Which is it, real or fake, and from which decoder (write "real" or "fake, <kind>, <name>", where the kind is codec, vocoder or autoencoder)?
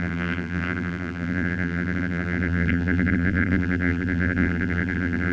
fake, vocoder, BigVGAN v2